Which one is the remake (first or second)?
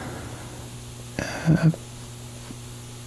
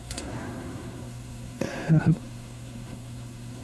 second